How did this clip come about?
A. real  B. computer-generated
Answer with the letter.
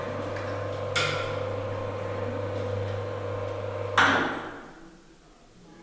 A